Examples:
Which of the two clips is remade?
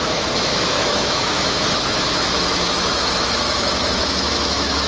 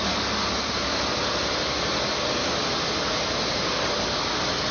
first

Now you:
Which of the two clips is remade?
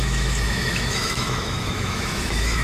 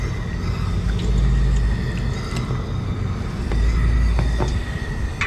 first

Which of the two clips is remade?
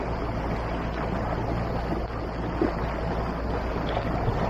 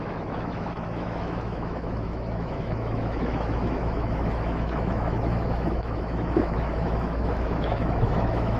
second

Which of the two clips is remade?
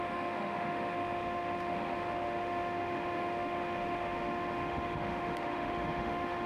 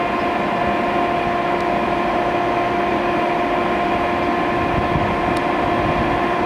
first